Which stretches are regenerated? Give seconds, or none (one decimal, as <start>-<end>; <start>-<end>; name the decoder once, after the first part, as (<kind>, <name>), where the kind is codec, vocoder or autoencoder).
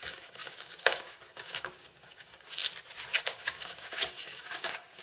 0.0-2.6 (codec, DAC); 3.2-5.0